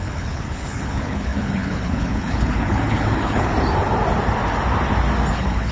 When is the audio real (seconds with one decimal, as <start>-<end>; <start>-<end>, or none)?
3.5-5.3